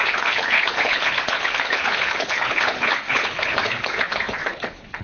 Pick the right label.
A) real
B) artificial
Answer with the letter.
B